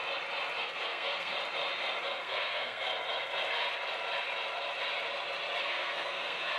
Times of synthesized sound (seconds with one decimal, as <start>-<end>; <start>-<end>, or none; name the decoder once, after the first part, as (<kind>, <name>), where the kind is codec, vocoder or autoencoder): 0.6-1.3 (codec, SNAC); 2.0-2.9; 5.6-6.6